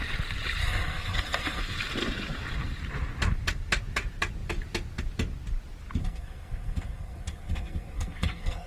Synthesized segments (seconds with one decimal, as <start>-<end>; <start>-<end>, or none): 0.6-1.6; 6.0-8.7